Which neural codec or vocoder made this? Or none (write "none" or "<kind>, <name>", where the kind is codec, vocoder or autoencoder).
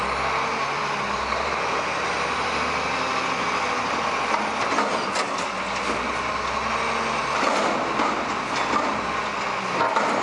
none